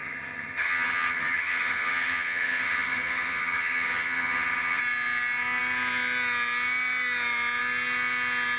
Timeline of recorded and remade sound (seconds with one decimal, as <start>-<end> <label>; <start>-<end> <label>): 0.0-4.8 remade; 4.8-8.6 recorded